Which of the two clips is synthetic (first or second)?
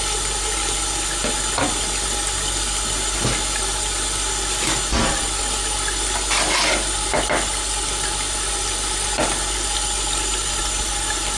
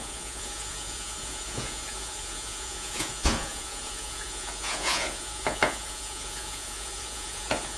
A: second